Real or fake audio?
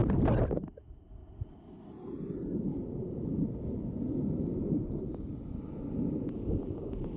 real